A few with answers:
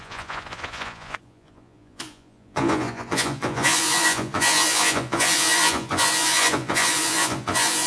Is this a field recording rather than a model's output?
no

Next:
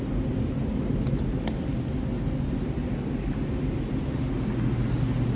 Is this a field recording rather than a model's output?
yes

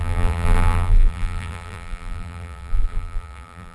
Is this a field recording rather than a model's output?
no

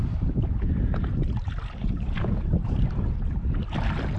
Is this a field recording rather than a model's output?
yes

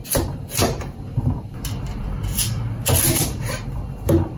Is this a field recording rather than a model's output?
no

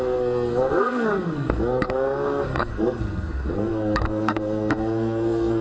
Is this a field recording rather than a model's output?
no